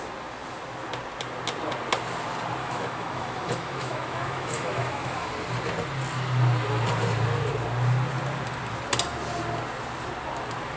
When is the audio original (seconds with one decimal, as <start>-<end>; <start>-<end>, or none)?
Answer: 0.0-2.6; 5.3-10.8